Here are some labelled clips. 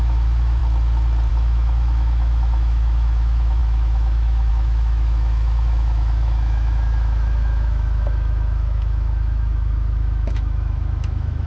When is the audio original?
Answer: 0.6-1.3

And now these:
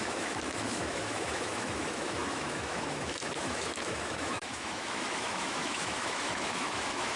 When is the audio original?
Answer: none

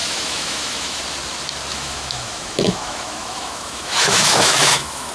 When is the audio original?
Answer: 1.0-1.7

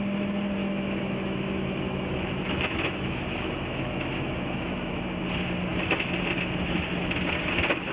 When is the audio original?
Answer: 0.0-0.6; 5.0-7.9

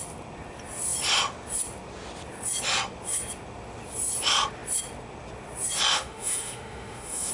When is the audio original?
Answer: 0.0-5.9

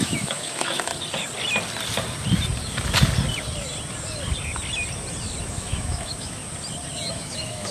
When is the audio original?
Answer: 0.9-5.4; 6.4-7.1

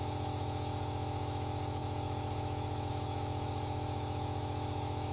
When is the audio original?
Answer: none